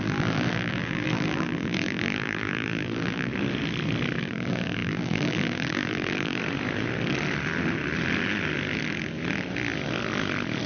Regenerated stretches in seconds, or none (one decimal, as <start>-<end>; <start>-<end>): 0.0-3.3; 4.2-6.4